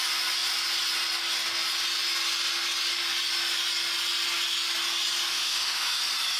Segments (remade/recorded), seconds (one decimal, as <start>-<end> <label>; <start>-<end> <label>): 0.0-5.3 recorded; 5.3-6.0 remade; 6.0-6.4 recorded